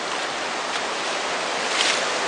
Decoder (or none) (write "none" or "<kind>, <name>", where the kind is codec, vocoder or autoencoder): none